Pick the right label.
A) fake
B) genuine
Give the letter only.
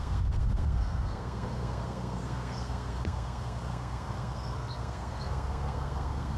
A